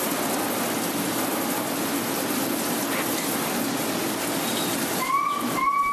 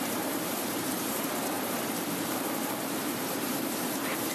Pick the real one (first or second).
first